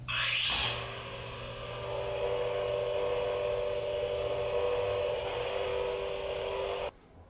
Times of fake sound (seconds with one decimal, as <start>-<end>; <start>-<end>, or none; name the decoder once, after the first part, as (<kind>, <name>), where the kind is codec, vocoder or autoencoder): 0.0-0.6 (vocoder, BigVGAN v2); 5.0-5.7